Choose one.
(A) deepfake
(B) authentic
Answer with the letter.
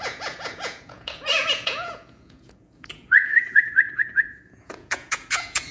A